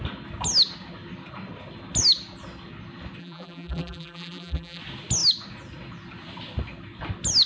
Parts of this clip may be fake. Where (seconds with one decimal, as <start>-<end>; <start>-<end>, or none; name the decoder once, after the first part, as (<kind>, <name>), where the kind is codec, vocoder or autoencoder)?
3.2-4.8 (vocoder, BigVGAN v2)